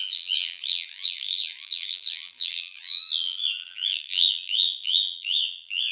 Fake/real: fake